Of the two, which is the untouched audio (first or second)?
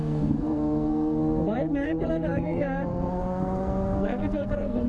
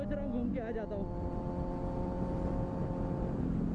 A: second